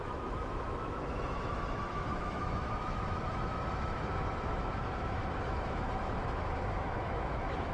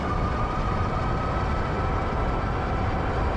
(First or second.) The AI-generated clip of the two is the first